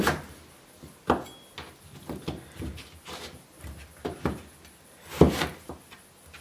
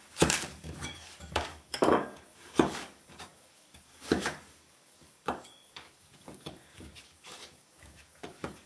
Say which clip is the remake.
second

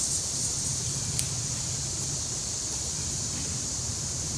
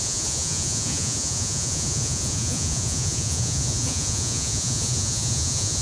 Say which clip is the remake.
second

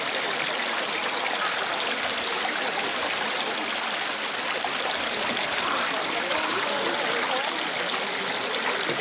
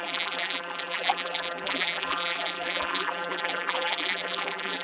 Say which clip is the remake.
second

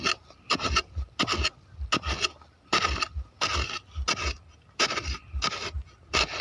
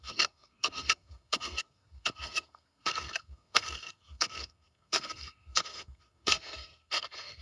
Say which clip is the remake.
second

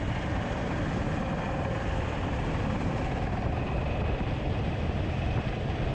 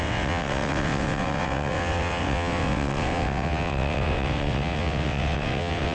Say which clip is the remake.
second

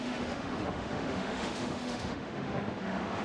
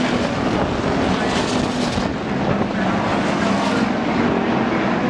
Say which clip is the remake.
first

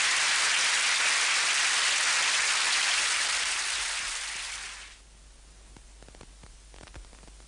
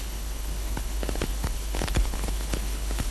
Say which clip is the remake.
second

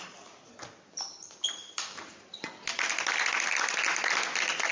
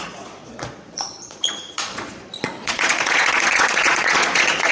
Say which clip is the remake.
second